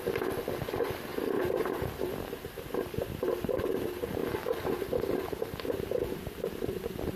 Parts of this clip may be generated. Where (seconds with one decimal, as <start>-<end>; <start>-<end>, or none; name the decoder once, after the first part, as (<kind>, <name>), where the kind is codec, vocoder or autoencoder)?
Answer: 0.0-4.2 (vocoder, BigVGAN v2); 5.0-7.2